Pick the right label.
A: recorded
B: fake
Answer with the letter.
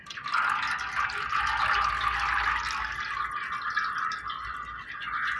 A